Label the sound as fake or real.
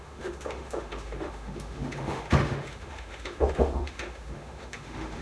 fake